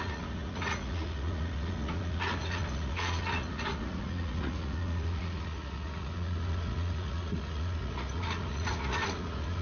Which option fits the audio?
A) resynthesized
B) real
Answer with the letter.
A